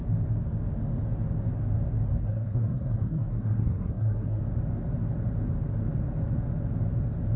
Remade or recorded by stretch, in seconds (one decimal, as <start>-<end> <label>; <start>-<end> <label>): 0.0-2.2 recorded; 2.2-4.4 remade; 4.4-7.4 recorded